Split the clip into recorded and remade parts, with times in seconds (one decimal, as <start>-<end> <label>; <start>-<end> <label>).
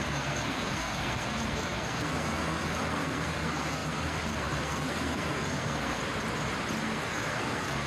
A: 0.0-6.0 remade; 6.0-6.8 recorded; 6.8-7.9 remade